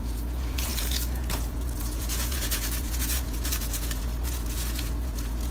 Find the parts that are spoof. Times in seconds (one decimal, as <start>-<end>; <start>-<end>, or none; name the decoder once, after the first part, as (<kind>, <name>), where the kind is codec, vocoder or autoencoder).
0.0-5.5 (vocoder, Vocos)